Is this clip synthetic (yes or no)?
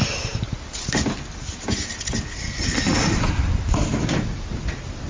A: no